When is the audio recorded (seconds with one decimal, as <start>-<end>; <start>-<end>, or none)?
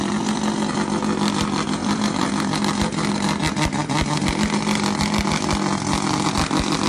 0.0-1.8; 2.3-6.9